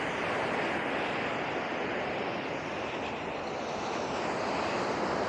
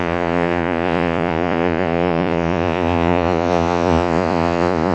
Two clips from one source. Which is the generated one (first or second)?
second